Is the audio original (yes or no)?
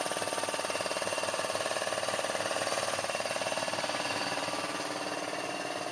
yes